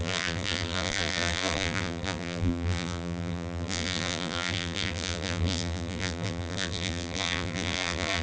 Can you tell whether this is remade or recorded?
remade